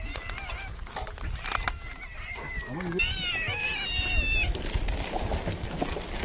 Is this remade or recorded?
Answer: recorded